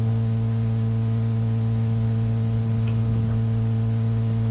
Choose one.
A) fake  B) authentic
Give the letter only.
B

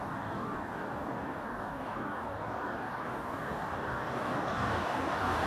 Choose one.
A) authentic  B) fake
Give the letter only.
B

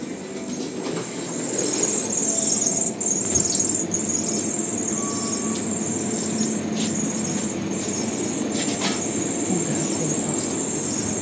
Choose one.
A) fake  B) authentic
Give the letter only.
B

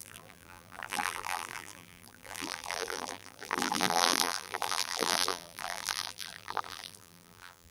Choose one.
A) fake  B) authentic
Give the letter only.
A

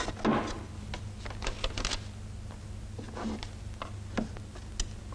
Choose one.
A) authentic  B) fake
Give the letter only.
A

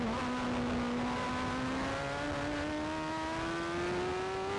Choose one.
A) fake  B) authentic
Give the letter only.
B